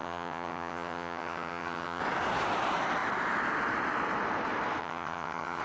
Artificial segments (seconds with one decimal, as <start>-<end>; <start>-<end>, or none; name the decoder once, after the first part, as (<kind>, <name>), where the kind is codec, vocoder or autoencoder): 0.0-2.0 (vocoder, HiFi-GAN); 4.8-5.6